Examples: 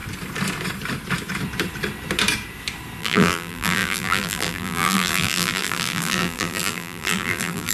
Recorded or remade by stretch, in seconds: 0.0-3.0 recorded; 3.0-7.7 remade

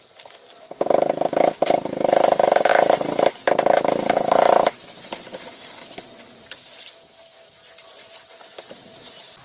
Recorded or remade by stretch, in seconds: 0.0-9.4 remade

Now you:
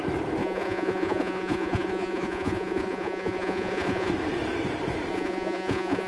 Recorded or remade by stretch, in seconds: 0.0-0.4 recorded; 0.4-4.1 remade; 4.1-5.1 recorded; 5.1-6.1 remade